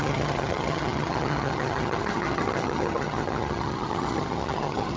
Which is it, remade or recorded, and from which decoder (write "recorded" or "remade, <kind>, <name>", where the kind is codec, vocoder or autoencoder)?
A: remade, vocoder, HiFi-GAN